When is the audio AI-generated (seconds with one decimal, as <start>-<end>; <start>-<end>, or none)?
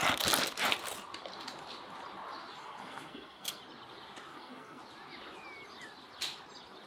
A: 2.6-3.6; 4.3-4.8